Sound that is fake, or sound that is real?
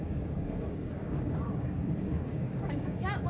fake